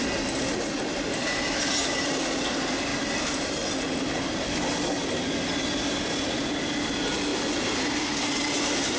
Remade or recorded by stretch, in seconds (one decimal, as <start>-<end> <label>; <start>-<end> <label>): 0.0-9.0 recorded